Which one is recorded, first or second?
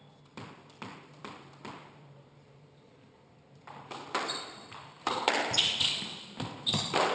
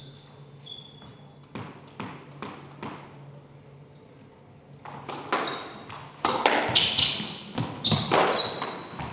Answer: second